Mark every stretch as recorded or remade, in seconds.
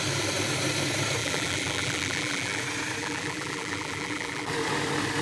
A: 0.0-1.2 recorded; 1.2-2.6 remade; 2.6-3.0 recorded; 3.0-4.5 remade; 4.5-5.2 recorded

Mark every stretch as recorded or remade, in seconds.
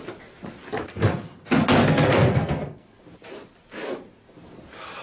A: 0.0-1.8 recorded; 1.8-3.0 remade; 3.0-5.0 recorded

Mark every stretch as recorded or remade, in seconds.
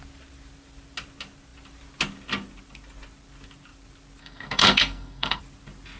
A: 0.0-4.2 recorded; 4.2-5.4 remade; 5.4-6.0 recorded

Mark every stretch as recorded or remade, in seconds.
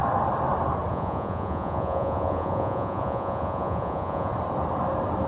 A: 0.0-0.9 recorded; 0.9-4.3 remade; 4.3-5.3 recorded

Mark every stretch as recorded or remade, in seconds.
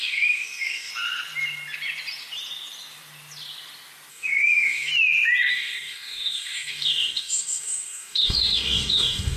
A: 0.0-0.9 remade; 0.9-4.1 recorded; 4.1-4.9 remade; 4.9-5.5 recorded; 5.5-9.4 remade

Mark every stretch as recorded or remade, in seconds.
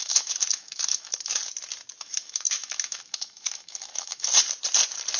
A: 0.0-1.4 remade; 1.4-2.0 recorded; 2.0-4.3 remade; 4.3-5.2 recorded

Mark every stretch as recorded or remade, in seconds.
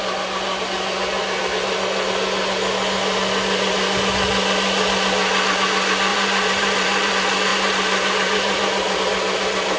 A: 0.0-6.1 recorded; 6.1-7.1 remade; 7.1-7.5 recorded; 7.5-9.0 remade; 9.0-9.8 recorded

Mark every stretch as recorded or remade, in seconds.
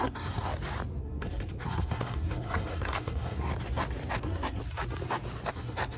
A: 0.0-0.5 remade; 0.5-1.0 recorded; 1.0-3.5 remade; 3.5-4.1 recorded; 4.1-4.6 remade; 4.6-5.5 recorded; 5.5-6.0 remade